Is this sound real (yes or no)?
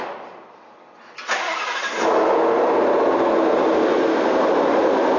yes